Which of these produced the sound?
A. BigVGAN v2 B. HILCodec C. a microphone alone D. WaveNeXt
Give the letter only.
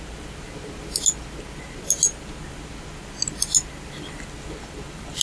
C